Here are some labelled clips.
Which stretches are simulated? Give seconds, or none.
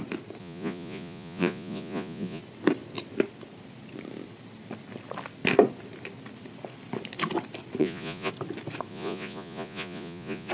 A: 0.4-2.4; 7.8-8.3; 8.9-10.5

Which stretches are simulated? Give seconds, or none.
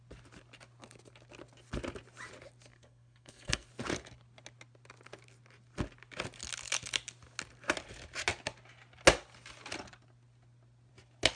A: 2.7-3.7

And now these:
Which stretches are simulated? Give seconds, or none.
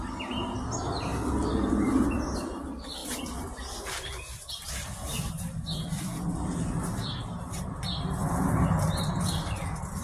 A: none